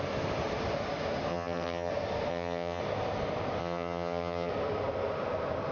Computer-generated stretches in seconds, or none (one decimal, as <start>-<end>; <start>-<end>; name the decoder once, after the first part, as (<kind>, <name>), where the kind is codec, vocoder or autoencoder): 1.3-1.9 (vocoder, HiFi-GAN); 2.3-2.8; 3.6-4.5